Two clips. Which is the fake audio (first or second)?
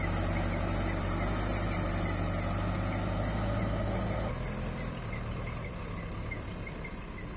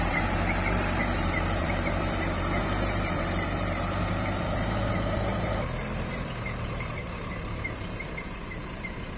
second